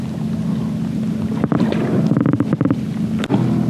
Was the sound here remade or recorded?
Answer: recorded